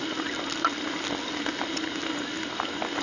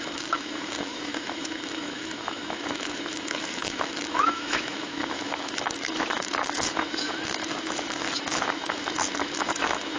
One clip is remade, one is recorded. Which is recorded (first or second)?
first